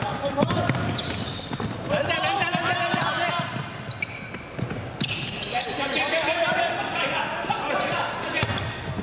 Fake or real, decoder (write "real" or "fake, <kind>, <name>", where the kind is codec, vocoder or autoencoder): real